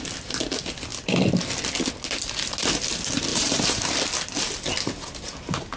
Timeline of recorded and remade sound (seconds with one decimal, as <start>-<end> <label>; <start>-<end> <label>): 0.0-3.3 recorded; 3.3-3.9 remade; 3.9-5.8 recorded